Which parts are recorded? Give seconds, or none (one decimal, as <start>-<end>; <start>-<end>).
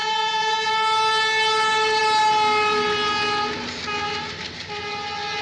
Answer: 0.7-5.4